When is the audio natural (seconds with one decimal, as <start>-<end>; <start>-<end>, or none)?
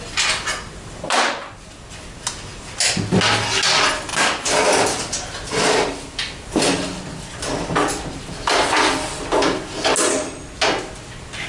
0.0-4.1; 6.6-11.5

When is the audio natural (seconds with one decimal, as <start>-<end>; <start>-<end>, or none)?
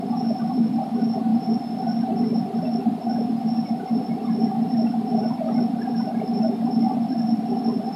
0.0-8.0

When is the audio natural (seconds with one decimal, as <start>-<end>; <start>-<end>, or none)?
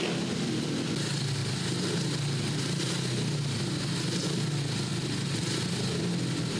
0.0-4.9; 6.1-6.6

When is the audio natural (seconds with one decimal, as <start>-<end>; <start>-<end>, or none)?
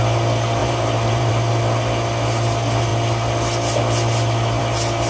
0.0-0.6; 1.3-5.1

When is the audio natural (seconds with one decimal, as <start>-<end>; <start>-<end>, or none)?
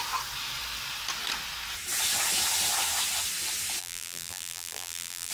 0.0-3.8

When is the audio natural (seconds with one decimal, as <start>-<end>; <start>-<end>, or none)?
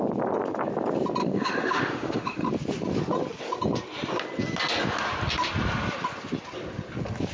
0.0-1.2; 2.5-7.3